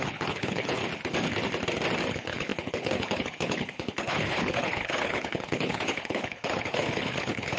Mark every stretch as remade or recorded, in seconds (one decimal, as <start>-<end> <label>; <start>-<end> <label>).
0.0-0.8 remade; 0.8-2.1 recorded; 2.1-7.6 remade